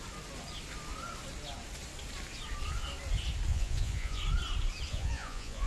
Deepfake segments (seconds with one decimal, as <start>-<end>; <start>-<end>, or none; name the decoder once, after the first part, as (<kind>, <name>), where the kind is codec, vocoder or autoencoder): 3.5-4.2 (vocoder, Vocos); 4.9-5.7